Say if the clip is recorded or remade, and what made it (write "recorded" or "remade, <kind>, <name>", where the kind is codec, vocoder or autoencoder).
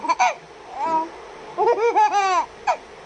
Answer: recorded